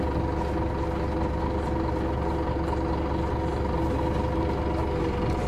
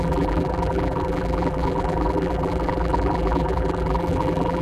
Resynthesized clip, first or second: second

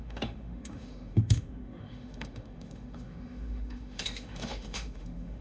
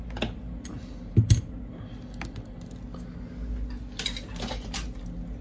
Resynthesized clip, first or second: first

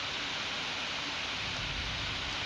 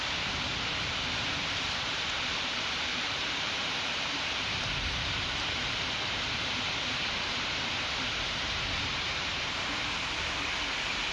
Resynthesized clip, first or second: second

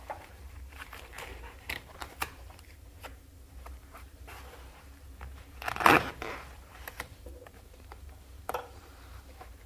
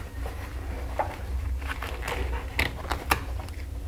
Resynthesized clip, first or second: first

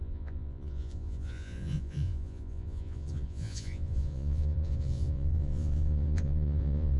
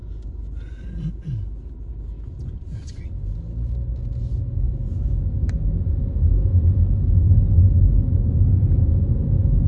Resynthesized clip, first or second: first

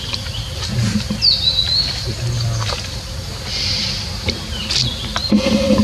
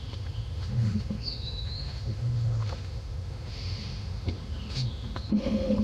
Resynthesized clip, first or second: second